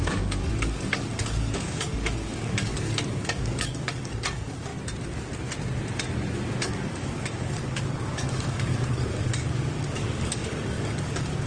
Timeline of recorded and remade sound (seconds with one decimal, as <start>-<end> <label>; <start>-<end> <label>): 0.0-4.7 remade; 4.7-6.6 recorded; 6.6-11.5 remade